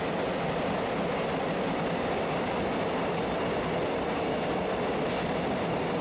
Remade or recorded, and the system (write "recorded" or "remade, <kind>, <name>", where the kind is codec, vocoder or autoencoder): recorded